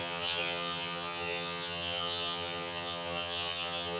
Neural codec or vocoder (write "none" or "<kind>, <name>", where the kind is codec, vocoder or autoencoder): vocoder, HiFi-GAN